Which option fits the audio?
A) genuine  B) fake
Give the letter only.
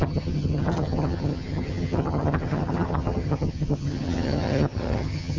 B